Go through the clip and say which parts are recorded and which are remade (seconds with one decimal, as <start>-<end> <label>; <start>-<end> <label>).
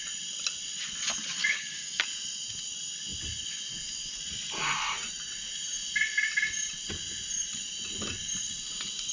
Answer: 0.0-1.4 recorded; 1.4-2.0 remade; 2.0-9.1 recorded